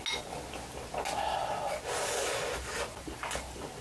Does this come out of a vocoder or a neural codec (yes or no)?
no